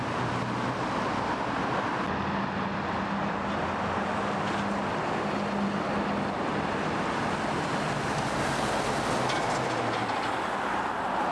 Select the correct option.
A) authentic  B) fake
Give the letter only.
A